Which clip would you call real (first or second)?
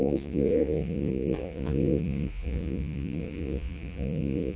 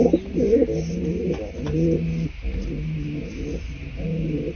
second